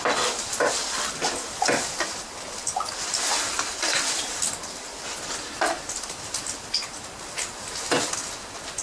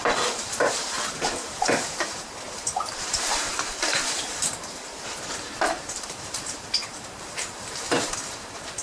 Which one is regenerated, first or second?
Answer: second